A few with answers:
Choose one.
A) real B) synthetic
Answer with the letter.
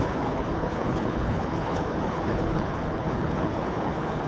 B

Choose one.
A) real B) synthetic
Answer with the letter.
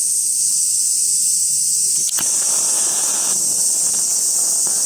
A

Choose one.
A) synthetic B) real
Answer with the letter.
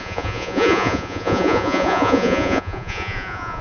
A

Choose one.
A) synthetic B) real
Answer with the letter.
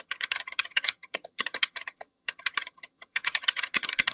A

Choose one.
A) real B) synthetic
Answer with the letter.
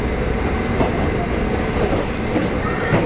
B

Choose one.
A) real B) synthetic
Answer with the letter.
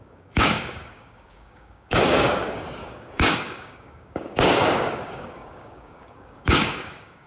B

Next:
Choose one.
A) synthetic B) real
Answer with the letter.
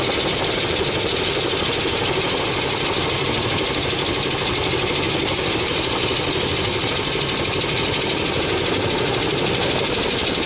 B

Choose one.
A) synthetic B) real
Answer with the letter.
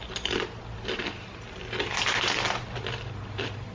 B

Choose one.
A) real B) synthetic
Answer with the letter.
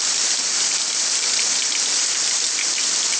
B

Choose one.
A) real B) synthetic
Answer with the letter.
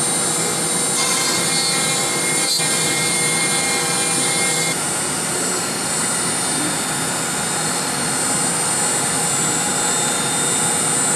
A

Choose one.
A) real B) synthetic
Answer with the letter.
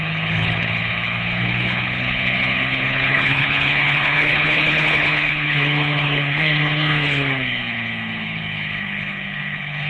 B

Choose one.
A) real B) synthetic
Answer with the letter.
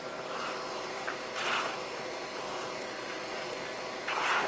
A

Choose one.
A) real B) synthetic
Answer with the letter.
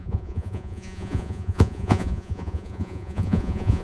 B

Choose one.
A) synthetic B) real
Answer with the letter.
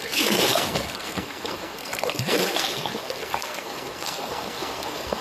A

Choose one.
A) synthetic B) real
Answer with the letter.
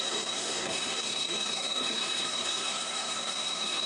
A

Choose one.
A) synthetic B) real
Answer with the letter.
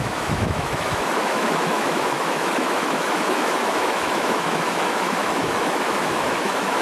A